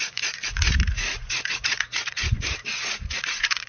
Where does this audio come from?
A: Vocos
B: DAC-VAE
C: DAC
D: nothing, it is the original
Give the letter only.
A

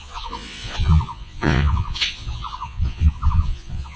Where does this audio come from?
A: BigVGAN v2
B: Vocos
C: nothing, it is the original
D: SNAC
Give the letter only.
B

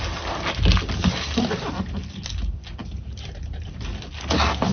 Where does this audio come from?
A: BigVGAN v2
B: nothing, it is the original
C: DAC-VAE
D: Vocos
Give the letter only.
B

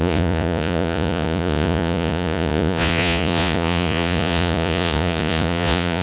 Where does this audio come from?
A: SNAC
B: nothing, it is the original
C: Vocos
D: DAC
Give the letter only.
C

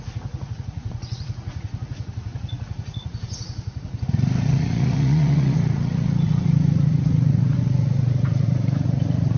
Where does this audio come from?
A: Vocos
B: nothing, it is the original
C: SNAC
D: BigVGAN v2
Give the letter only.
A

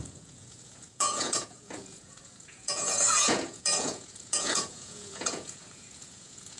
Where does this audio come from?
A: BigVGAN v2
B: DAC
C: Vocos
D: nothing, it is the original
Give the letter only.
C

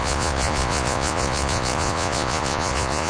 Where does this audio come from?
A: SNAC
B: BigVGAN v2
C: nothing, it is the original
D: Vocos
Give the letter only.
D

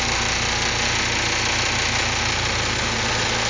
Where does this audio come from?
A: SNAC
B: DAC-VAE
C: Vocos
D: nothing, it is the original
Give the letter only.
D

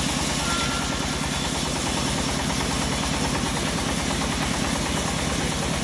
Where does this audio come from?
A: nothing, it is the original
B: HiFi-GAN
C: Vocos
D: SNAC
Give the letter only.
A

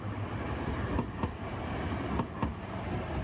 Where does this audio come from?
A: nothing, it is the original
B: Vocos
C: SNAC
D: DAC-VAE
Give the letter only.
A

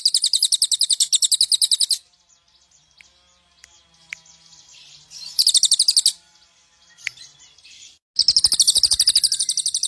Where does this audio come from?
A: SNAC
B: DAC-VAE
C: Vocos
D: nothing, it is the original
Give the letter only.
D